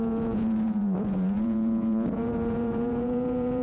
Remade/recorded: remade